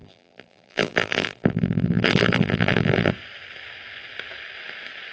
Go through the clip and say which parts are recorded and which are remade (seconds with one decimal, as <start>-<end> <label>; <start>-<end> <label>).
0.0-3.1 remade; 3.1-5.1 recorded